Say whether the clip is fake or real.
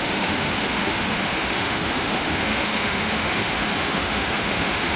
fake